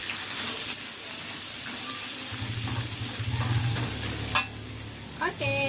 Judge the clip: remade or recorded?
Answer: recorded